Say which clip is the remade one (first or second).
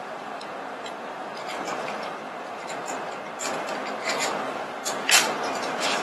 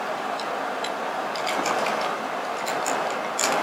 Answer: first